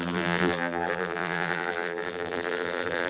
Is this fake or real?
fake